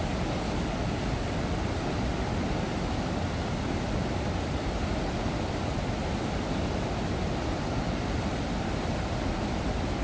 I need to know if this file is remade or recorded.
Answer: recorded